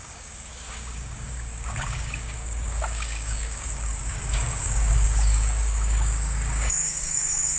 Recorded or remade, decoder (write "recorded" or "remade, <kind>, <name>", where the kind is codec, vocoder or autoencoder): remade, codec, DAC